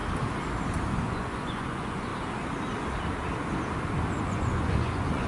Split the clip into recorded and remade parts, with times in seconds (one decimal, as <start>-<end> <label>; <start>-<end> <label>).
0.0-1.0 recorded; 1.0-2.1 remade; 2.1-4.3 recorded; 4.3-5.3 remade

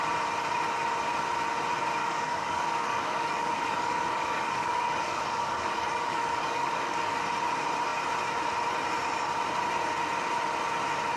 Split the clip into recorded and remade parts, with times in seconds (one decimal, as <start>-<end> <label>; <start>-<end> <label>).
0.0-2.0 recorded; 2.0-7.2 remade; 7.2-11.2 recorded